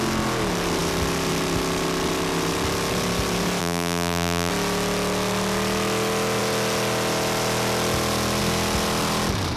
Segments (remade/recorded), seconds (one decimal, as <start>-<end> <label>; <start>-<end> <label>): 0.0-3.6 recorded; 3.6-4.5 remade; 4.5-9.6 recorded